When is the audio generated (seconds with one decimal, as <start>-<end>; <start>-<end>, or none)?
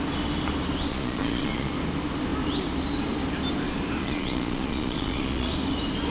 0.9-1.7; 4.0-5.5